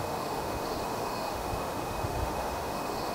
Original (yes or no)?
no